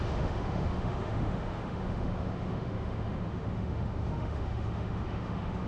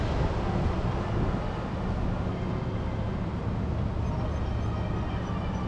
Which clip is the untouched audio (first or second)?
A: second